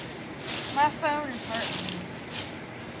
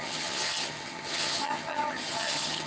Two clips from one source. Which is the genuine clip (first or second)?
first